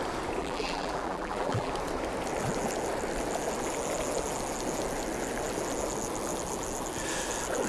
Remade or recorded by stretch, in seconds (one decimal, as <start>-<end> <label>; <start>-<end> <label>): 0.0-0.4 recorded; 0.4-1.7 remade; 1.7-7.7 recorded